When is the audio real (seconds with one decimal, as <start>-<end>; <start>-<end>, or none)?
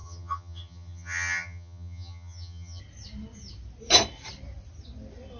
2.8-5.4